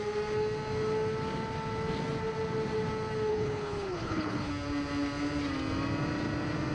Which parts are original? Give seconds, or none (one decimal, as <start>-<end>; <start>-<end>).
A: 0.0-3.3; 4.5-6.7